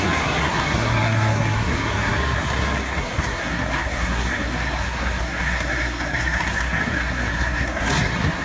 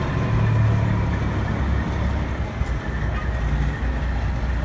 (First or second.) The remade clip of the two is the first